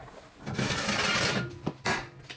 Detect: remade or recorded recorded